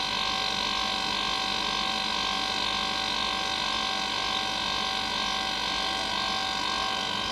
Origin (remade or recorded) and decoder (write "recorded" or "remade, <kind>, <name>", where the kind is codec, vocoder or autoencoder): recorded